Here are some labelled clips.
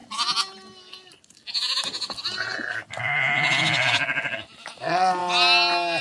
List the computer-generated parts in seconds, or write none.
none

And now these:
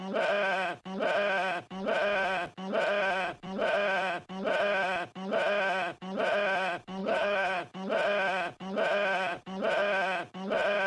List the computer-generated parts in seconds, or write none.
7.0-7.6 (codec, HILCodec)

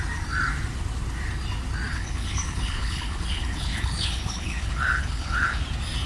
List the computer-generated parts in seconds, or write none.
1.9-5.6 (codec, HILCodec)

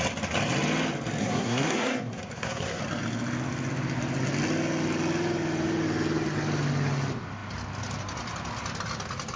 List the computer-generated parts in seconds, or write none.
1.2-2.8 (codec, SNAC)

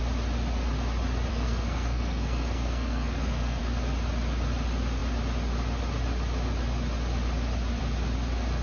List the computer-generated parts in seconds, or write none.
1.3-3.6 (codec, SNAC)

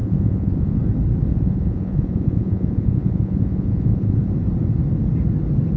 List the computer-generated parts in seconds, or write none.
0.0-0.8 (vocoder, Vocos); 1.3-4.3

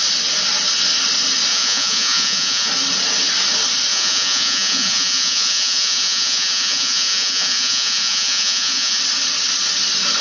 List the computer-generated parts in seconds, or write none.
1.5-2.7 (vocoder, Vocos); 3.9-9.0

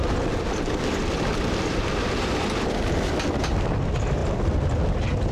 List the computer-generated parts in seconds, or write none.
0.0-5.3 (vocoder, BigVGAN v2)